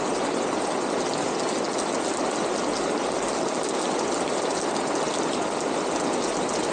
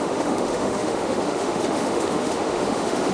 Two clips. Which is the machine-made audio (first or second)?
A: second